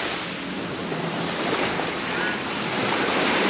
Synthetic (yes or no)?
no